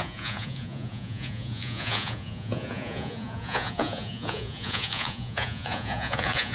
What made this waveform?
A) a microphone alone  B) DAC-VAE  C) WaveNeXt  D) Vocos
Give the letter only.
D